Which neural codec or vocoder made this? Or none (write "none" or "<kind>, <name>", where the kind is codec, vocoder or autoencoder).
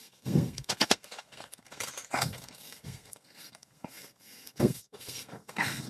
codec, SNAC